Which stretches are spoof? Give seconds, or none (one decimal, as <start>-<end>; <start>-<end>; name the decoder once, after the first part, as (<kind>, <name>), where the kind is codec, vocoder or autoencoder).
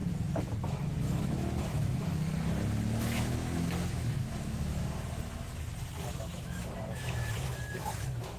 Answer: 0.6-2.1 (autoencoder, DAC-VAE); 2.8-4.8; 6.1-8.4